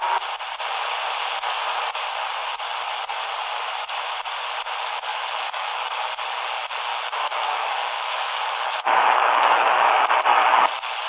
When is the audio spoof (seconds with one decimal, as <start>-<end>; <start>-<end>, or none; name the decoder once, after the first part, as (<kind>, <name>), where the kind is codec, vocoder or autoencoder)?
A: 5.1-5.9 (autoencoder, DAC-VAE); 6.9-10.0